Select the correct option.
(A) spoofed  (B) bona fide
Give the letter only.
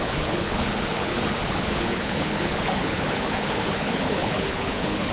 A